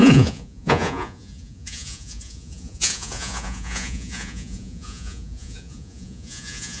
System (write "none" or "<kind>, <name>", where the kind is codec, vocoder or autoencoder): vocoder, Vocos